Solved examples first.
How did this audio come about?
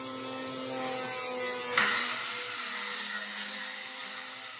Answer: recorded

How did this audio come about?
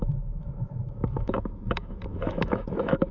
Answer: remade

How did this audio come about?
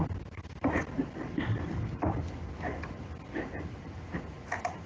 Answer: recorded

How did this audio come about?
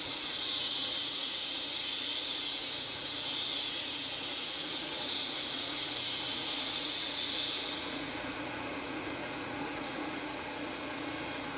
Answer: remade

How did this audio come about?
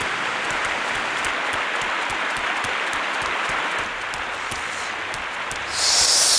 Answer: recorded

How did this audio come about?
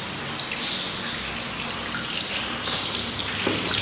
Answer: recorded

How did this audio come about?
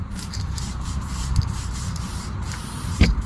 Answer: remade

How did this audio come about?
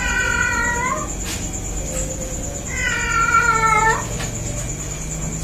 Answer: recorded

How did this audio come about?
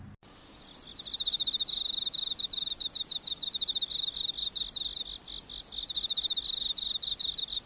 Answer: recorded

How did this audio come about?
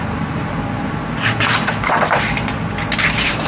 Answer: recorded